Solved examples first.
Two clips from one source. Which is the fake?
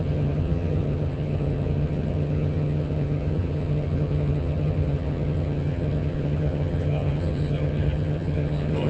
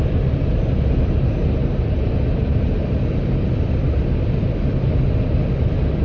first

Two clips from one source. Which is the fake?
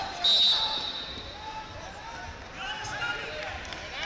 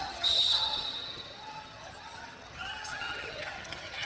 second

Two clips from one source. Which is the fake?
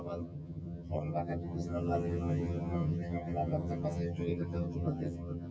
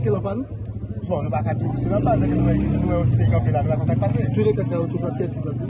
first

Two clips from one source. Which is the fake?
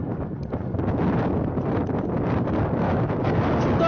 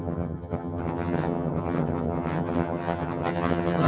second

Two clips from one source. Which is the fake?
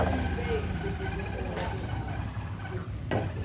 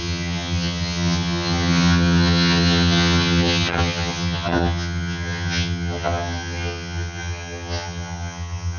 second